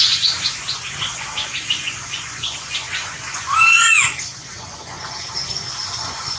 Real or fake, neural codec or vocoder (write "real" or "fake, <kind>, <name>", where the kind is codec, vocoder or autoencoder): fake, vocoder, Vocos